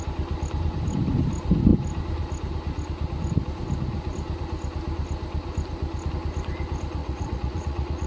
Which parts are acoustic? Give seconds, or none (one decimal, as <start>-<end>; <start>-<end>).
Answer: 0.0-7.0

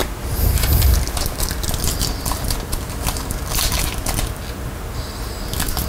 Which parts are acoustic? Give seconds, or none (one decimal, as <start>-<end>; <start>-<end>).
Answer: 0.7-5.9

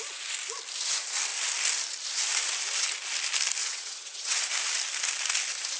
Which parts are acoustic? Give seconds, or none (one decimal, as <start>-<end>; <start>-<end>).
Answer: 0.0-3.6; 4.4-5.8

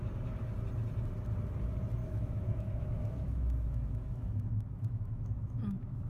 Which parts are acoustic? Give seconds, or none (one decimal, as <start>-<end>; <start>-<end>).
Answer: 0.0-2.0